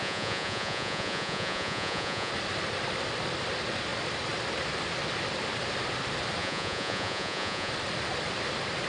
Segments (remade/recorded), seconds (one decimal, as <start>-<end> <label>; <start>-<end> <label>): 0.0-2.3 remade; 2.3-6.4 recorded; 6.4-7.7 remade; 7.7-8.9 recorded